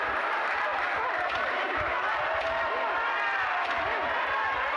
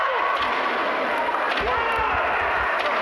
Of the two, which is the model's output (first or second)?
first